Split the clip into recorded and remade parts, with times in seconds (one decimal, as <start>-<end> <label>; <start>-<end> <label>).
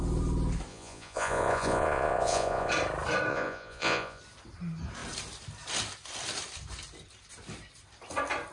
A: 0.0-0.7 recorded; 0.7-2.7 remade; 2.7-3.3 recorded; 3.3-4.2 remade; 4.2-8.5 recorded